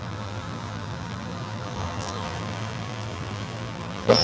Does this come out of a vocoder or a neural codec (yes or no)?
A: yes